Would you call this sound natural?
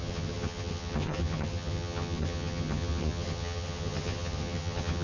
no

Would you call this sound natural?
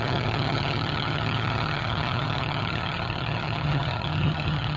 no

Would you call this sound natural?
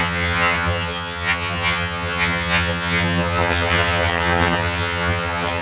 no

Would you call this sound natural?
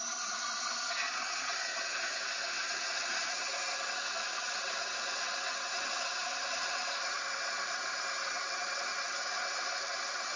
no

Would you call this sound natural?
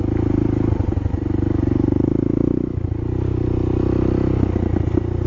yes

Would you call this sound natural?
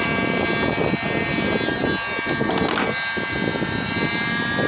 yes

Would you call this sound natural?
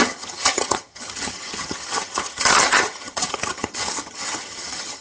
no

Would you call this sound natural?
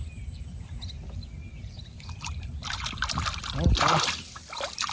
yes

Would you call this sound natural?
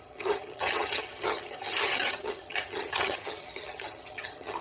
no